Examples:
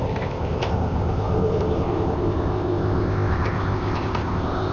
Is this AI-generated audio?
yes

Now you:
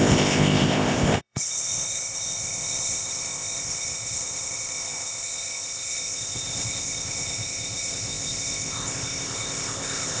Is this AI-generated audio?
yes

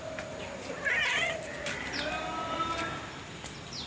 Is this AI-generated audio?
no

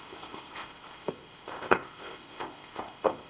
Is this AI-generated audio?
yes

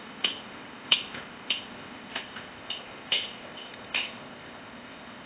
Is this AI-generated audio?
yes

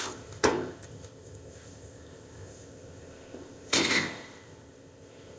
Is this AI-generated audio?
yes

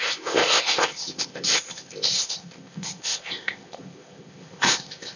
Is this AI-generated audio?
yes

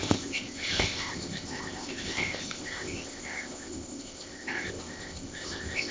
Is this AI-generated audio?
yes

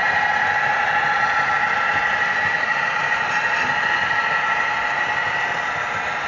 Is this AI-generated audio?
no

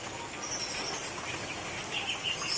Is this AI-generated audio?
no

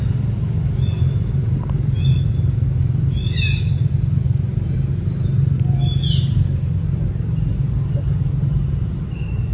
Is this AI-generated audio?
no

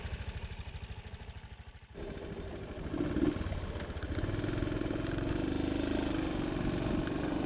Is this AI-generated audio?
no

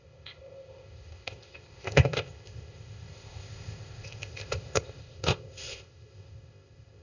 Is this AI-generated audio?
yes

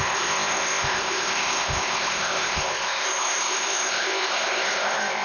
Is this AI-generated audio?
yes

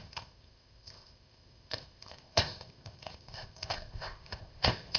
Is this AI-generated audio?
yes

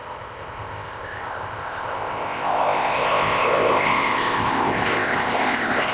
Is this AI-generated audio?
yes